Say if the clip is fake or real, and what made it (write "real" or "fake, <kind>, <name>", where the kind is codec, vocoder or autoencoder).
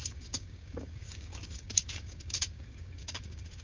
fake, codec, DAC